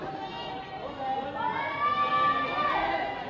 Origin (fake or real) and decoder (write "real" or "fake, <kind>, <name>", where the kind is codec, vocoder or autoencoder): real